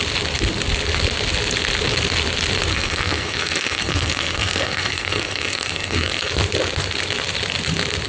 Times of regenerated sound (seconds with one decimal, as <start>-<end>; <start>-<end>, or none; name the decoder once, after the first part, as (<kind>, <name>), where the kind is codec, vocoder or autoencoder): 2.7-6.3 (codec, SNAC)